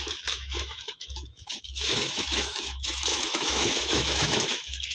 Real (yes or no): no